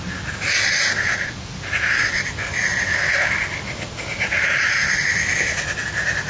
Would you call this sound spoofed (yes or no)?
no